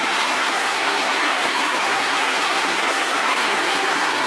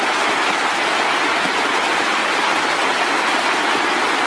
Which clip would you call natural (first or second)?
second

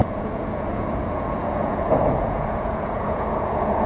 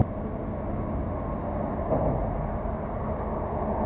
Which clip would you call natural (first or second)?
second